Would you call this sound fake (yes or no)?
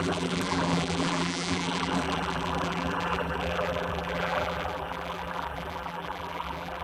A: yes